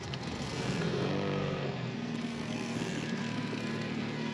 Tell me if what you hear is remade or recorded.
remade